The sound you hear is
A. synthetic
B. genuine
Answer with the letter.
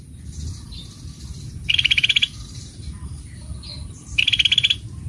A